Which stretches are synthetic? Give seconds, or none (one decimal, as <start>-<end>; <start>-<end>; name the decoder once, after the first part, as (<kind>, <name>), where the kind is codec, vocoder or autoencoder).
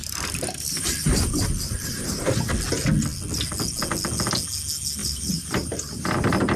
0.0-2.5 (vocoder, BigVGAN v2); 5.0-6.6